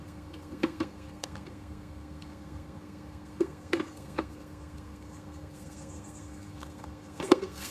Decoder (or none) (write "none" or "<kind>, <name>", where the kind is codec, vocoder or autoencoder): codec, SNAC